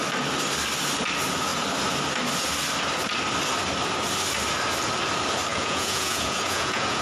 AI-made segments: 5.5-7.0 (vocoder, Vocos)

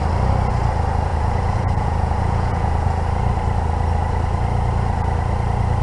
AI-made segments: 1.1-3.1 (vocoder, Vocos)

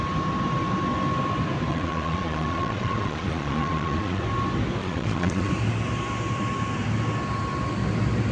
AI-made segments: 1.7-4.2 (vocoder, Vocos); 4.8-5.5

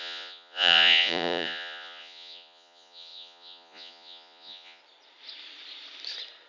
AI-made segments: 0.0-4.8 (vocoder, Vocos)

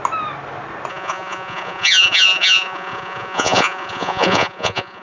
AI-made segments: 0.9-5.0 (vocoder, Vocos)

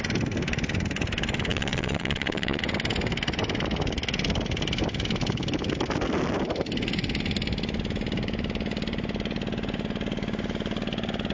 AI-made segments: 1.5-2.6 (vocoder, Vocos)